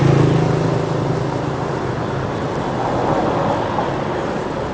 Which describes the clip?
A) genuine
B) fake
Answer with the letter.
A